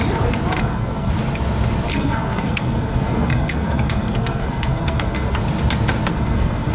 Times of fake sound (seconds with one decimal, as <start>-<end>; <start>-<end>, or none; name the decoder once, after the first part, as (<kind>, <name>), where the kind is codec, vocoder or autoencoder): 0.6-1.1 (codec, SNAC); 1.9-5.4; 6.1-6.7